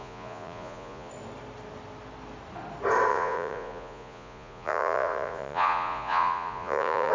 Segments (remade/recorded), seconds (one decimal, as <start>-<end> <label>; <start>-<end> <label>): 0.0-1.1 remade; 1.1-3.1 recorded; 3.1-7.1 remade